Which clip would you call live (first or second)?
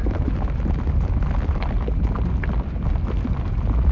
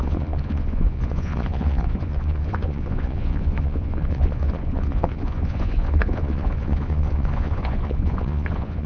first